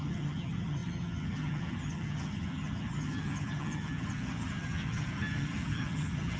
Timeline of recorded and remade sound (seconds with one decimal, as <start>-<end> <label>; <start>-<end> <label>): 0.0-6.4 remade